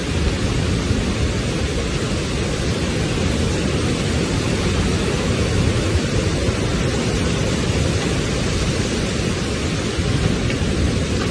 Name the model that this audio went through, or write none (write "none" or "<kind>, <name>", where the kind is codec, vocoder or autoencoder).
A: none